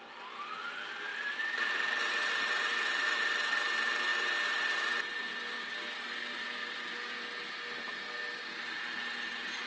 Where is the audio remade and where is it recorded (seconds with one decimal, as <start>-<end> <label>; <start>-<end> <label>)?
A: 0.0-1.1 recorded; 1.1-3.2 remade; 3.2-9.7 recorded